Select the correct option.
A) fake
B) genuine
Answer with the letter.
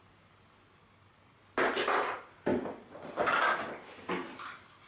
B